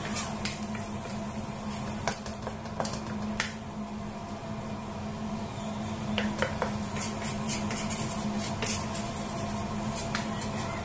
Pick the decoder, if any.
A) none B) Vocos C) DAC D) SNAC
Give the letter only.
A